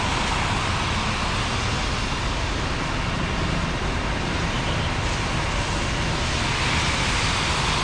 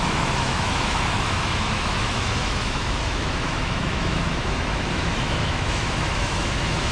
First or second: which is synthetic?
second